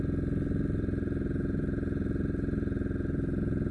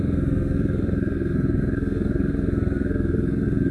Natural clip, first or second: first